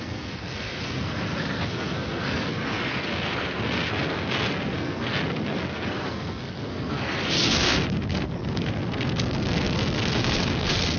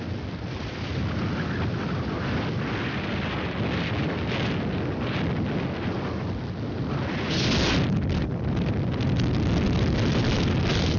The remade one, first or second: first